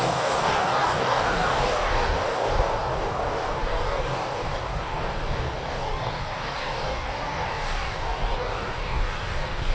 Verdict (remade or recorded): remade